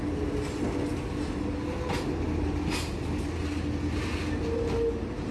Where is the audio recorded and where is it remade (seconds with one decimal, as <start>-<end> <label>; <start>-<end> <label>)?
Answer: 0.0-5.3 recorded